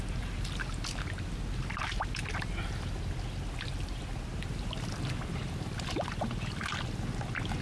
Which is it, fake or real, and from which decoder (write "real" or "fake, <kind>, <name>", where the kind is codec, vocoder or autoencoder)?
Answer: real